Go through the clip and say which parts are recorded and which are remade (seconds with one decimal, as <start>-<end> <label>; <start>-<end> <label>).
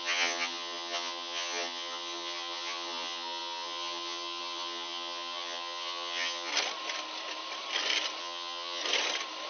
0.0-6.5 remade; 6.5-8.2 recorded; 8.2-8.8 remade; 8.8-9.5 recorded